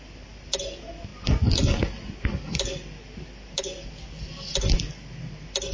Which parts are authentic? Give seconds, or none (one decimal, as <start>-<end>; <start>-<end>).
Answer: 0.0-5.7